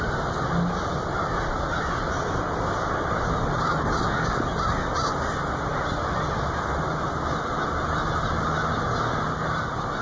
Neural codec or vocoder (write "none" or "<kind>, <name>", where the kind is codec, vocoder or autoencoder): none